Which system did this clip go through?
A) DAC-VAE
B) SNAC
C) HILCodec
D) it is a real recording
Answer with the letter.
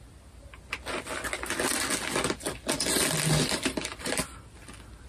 D